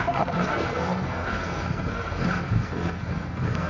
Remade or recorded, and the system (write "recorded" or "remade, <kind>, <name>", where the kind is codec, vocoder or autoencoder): remade, codec, SNAC